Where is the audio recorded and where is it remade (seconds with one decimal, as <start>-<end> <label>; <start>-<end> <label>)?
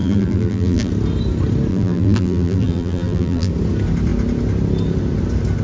0.0-0.9 remade; 0.9-1.7 recorded; 1.7-3.5 remade; 3.5-5.6 recorded